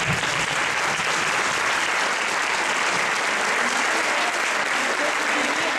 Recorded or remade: recorded